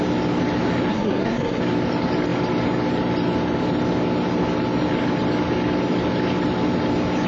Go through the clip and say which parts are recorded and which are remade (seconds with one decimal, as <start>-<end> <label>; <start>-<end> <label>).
0.0-0.9 recorded; 0.9-1.6 remade; 1.6-7.3 recorded